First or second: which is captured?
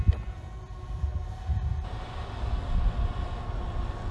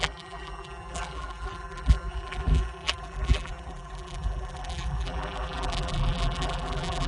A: first